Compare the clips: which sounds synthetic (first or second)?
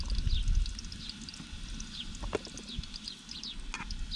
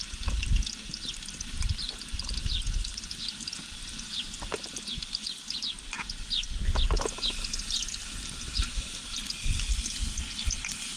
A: second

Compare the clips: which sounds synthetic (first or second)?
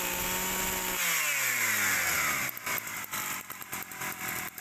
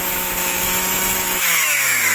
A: second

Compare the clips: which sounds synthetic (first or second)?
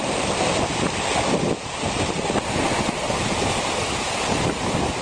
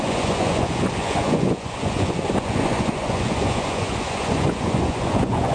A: second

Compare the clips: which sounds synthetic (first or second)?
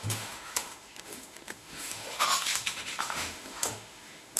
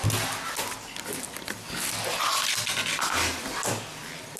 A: first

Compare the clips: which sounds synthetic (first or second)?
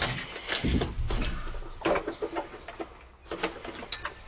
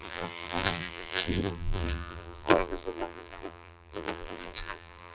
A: second